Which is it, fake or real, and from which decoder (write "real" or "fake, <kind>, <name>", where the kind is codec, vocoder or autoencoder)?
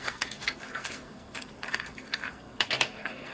fake, codec, SNAC